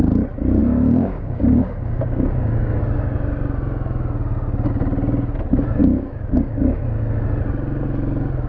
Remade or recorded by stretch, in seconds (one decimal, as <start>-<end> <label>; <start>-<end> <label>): 0.0-0.6 recorded; 0.6-2.8 remade; 2.8-5.8 recorded; 5.8-6.8 remade; 6.8-8.5 recorded